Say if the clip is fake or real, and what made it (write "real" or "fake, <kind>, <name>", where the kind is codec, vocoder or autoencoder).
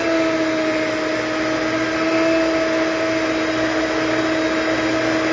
real